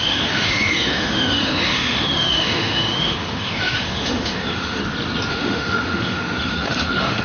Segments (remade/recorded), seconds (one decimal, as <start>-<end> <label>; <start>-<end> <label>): 0.0-4.8 remade; 4.8-5.3 recorded; 5.3-7.2 remade

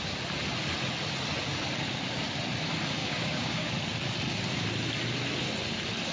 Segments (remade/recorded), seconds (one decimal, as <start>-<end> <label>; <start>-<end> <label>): 0.0-3.0 recorded; 3.0-3.7 remade; 3.7-6.1 recorded

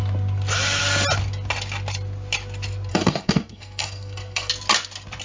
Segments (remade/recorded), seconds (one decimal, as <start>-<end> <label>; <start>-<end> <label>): 0.0-2.9 recorded; 2.9-4.5 remade; 4.5-5.2 recorded

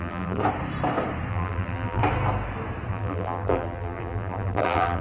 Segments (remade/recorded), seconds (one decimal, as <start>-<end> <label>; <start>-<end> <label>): 0.0-0.4 remade; 0.4-1.3 recorded; 1.3-2.0 remade; 2.0-2.9 recorded; 2.9-5.0 remade

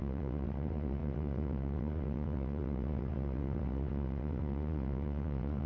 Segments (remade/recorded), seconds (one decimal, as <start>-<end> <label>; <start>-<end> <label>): 0.0-5.7 remade

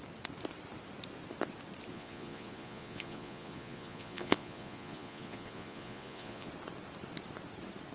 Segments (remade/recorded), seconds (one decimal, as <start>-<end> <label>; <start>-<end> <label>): 0.0-1.9 recorded; 1.9-6.5 remade; 6.5-7.9 recorded

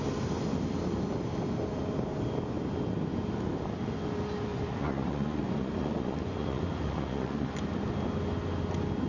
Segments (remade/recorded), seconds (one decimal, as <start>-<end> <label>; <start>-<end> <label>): 0.0-4.5 recorded; 4.5-7.6 remade; 7.6-9.1 recorded